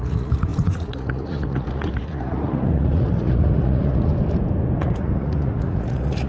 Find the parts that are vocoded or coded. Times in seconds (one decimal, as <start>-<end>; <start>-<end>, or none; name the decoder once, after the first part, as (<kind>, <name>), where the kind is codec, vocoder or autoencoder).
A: 0.0-4.1 (vocoder, Vocos); 4.8-6.3